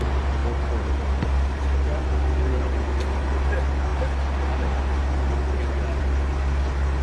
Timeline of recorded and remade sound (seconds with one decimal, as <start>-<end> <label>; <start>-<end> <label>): 0.0-7.0 recorded